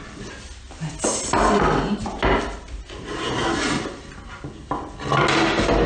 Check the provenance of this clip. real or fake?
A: real